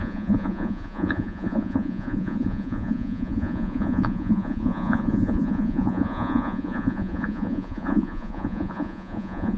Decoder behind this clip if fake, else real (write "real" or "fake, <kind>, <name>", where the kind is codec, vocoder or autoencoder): fake, vocoder, Vocos